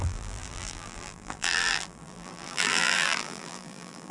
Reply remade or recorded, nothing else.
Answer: remade